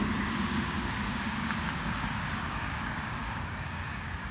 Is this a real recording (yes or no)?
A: no